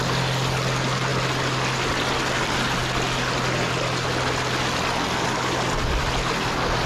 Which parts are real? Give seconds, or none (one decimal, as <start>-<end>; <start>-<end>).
0.0-6.9